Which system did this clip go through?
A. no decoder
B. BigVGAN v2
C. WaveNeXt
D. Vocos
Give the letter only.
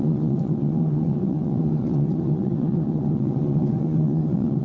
C